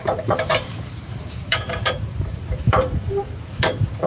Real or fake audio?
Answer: fake